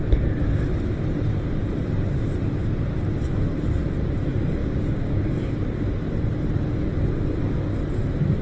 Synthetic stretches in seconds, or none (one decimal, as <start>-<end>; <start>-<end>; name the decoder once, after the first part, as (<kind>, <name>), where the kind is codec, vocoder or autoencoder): 4.6-5.4 (codec, DAC)